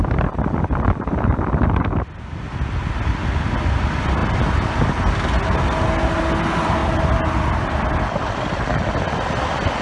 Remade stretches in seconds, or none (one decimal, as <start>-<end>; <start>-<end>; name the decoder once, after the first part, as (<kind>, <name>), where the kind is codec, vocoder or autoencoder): none